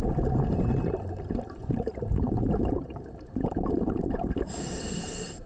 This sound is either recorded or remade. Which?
remade